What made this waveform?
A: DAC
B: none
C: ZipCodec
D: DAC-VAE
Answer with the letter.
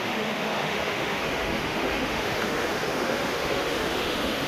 D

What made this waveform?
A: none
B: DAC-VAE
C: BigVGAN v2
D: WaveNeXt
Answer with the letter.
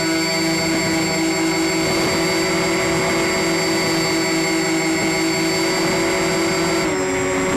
A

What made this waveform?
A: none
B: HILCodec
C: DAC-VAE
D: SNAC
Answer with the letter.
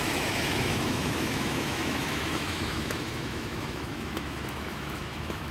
C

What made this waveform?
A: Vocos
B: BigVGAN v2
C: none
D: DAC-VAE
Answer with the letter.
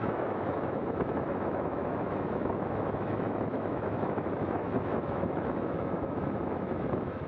D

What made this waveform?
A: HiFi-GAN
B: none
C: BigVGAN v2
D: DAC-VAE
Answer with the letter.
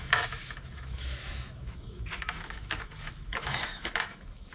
D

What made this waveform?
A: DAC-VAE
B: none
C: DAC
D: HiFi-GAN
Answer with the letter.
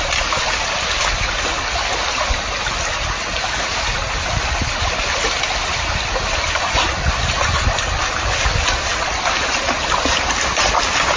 B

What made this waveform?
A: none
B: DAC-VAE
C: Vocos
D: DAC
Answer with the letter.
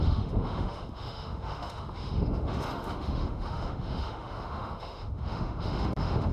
B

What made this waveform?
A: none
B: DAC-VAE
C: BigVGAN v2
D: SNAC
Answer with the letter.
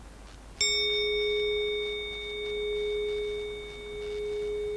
A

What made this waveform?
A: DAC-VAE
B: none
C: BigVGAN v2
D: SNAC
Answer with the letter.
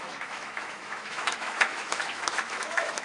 A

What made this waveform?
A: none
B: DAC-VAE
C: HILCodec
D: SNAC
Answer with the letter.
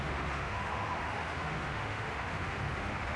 B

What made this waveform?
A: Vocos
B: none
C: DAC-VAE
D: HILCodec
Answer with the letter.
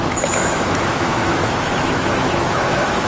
C